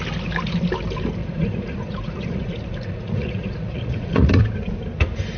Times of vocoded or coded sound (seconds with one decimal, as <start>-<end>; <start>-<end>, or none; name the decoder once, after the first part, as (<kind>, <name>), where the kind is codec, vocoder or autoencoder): 1.2-4.4 (vocoder, Vocos)